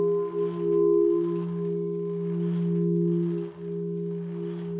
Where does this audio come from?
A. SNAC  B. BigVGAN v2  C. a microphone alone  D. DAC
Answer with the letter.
C